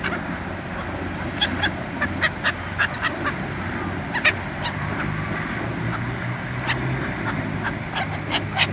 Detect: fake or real real